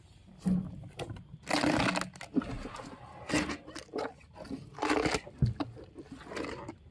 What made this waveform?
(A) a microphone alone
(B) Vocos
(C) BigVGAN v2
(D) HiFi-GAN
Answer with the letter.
A